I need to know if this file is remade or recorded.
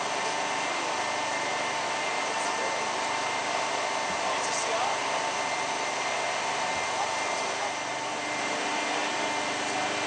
recorded